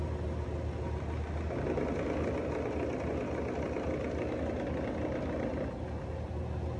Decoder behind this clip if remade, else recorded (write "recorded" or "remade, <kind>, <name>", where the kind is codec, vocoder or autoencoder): recorded